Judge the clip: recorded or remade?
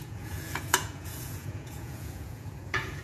remade